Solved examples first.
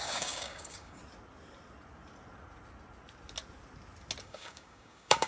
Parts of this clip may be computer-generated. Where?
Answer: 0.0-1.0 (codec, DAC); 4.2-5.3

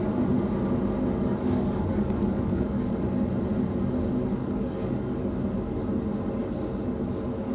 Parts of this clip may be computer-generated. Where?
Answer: 1.3-3.0 (codec, DAC); 4.4-5.3

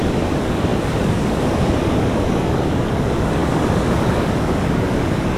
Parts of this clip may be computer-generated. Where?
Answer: 0.0-5.4 (codec, DAC)

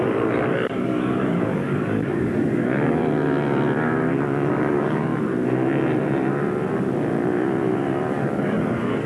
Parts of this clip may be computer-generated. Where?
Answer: 0.0-3.0 (codec, DAC); 4.5-5.1; 8.1-9.1